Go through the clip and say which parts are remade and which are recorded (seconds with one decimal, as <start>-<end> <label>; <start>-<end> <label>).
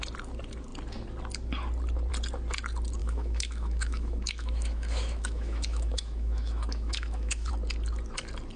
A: 0.0-3.0 recorded; 3.0-7.5 remade; 7.5-8.6 recorded